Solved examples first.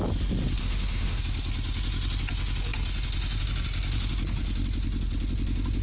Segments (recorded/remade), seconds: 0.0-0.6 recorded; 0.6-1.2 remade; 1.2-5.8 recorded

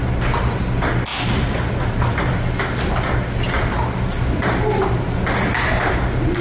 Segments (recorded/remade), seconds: 0.0-6.4 recorded